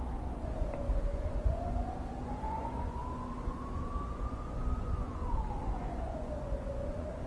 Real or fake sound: fake